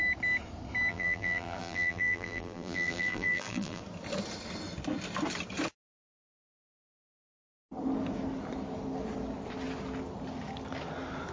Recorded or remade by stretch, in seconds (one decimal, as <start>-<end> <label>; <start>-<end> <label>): 0.0-0.9 recorded; 0.9-3.8 remade; 3.8-11.3 recorded